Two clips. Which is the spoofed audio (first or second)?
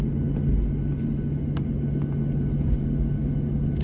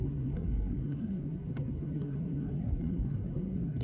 second